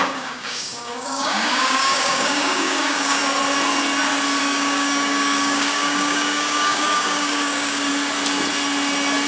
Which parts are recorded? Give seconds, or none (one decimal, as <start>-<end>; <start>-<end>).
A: 3.2-4.4; 7.9-9.3

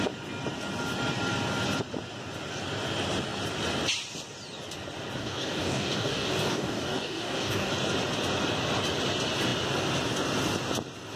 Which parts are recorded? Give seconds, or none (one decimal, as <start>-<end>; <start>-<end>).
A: 0.0-5.2; 7.7-11.2

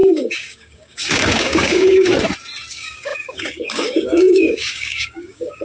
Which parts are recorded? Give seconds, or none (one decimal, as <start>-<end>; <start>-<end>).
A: 2.1-2.7